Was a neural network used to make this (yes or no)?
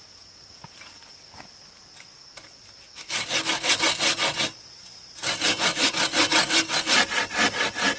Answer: no